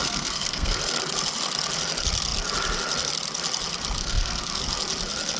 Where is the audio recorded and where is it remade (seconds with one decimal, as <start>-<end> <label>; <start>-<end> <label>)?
0.0-0.8 remade; 0.8-4.0 recorded; 4.0-4.6 remade; 4.6-5.4 recorded